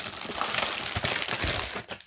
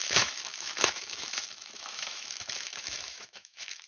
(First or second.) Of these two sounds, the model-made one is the second